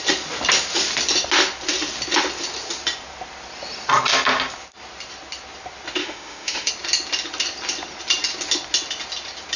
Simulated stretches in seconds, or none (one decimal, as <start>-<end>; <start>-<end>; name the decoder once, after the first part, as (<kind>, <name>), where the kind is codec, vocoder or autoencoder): 6.0-6.7 (autoencoder, DAC-VAE)